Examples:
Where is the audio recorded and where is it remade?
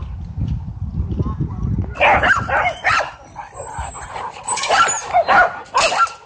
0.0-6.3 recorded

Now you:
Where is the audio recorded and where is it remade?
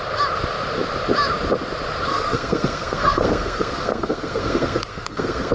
0.0-2.1 recorded; 2.1-5.5 remade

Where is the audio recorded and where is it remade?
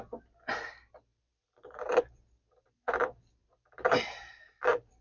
0.0-1.1 recorded; 1.1-2.0 remade; 2.0-3.4 recorded; 3.4-4.5 remade; 4.5-5.0 recorded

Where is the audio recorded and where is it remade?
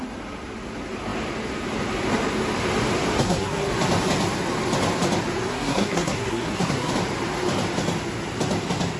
0.0-3.2 recorded; 3.2-3.7 remade; 3.7-5.5 recorded; 5.5-6.9 remade; 6.9-9.0 recorded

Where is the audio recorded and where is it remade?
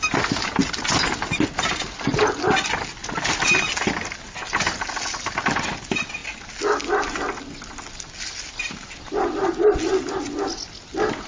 0.0-0.6 recorded; 0.6-1.7 remade; 1.7-11.3 recorded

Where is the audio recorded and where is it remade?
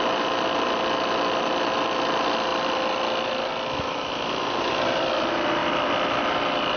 0.0-6.8 recorded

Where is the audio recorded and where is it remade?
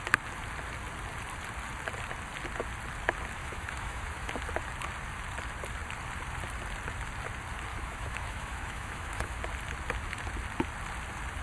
0.0-3.4 recorded; 3.4-4.3 remade; 4.3-7.7 recorded; 7.7-9.4 remade; 9.4-11.4 recorded